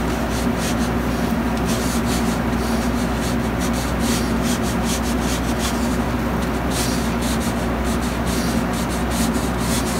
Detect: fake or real real